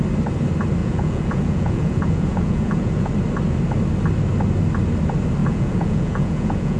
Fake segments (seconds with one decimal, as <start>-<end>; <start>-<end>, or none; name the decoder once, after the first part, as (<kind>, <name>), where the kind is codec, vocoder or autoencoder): 0.8-3.1 (vocoder, Vocos); 5.4-6.8